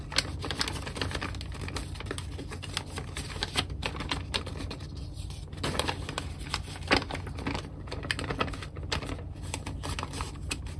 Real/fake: real